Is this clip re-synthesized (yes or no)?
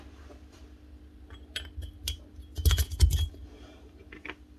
no